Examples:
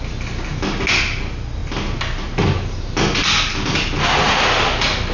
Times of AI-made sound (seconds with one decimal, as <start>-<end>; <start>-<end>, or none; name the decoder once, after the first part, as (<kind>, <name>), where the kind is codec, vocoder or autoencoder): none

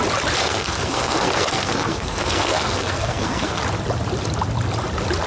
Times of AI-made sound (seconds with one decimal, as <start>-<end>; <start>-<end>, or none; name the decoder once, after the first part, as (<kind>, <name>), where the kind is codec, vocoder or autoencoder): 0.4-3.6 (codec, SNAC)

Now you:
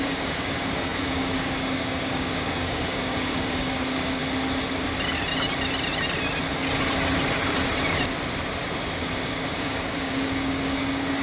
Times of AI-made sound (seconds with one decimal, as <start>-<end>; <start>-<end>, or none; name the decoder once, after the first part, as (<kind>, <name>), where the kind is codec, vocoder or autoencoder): 0.0-4.2 (codec, DAC); 9.0-11.2